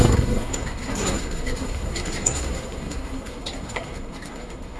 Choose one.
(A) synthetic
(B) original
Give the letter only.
A